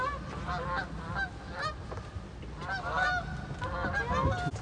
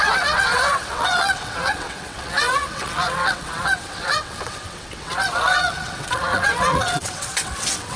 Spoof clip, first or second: second